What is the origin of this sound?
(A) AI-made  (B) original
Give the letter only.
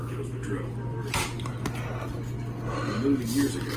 B